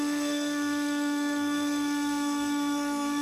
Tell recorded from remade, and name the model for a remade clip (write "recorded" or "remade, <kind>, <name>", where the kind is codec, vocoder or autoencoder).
remade, codec, SNAC